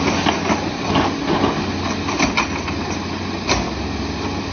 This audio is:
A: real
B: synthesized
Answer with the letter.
A